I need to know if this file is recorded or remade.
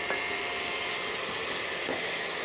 recorded